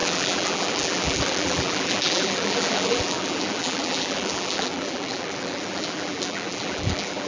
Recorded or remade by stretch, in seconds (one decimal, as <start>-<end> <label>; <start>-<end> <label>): 0.0-7.3 remade